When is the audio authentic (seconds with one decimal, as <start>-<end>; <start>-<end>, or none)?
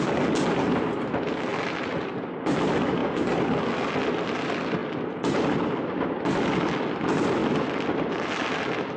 0.0-9.0